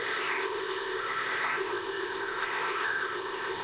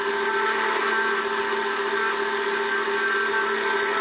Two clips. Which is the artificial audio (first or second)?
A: first